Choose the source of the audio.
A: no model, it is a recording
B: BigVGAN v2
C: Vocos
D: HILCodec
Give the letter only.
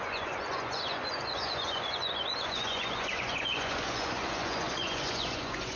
C